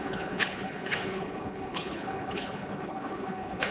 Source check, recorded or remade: remade